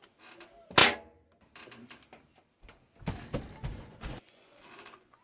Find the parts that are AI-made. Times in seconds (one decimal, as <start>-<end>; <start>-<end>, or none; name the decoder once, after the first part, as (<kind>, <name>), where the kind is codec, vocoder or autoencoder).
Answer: 3.7-5.2 (vocoder, Vocos)